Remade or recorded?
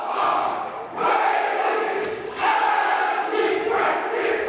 remade